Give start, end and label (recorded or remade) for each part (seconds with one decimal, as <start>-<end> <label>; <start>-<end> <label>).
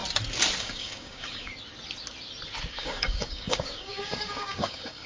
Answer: 0.0-0.6 recorded; 0.6-1.5 remade; 1.5-2.7 recorded; 2.7-5.1 remade